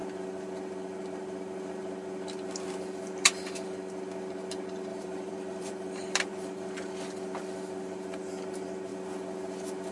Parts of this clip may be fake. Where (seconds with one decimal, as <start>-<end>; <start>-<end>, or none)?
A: 4.9-5.7